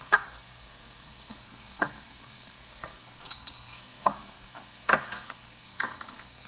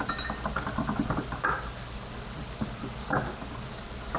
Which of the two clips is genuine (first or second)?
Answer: second